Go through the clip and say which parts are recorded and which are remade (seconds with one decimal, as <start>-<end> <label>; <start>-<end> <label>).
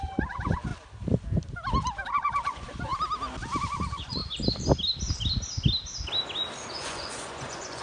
0.0-0.7 remade; 0.7-2.1 recorded; 2.1-2.9 remade; 2.9-3.6 recorded; 3.6-4.2 remade; 4.2-6.7 recorded; 6.7-7.8 remade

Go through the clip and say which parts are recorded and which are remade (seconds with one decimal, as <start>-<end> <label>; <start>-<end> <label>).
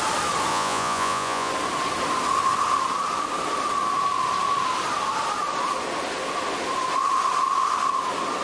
0.0-0.5 recorded; 0.5-1.5 remade; 1.5-8.4 recorded